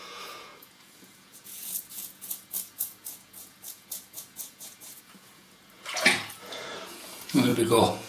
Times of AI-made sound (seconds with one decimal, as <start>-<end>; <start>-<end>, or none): 0.0-8.1